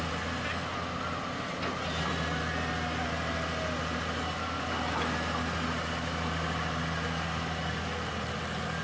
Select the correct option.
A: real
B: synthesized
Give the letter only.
A